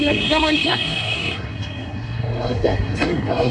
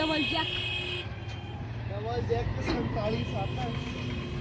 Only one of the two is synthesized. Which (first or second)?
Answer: first